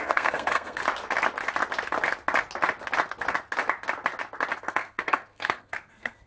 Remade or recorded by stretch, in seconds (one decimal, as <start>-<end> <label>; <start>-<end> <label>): 0.0-0.8 remade; 0.8-4.6 recorded; 4.6-6.3 remade